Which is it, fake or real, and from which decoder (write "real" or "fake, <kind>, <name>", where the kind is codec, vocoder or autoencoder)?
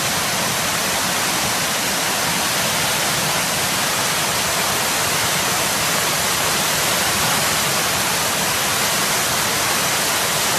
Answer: real